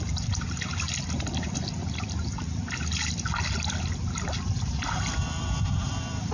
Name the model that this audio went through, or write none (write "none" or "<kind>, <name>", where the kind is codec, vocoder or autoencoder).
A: none